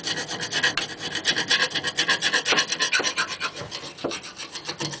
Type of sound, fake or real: real